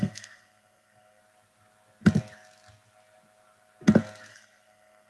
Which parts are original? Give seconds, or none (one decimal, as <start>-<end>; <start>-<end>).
1.2-4.3

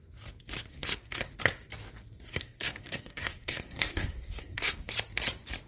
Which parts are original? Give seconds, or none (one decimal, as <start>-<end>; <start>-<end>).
0.0-0.7; 1.3-2.3; 4.9-5.7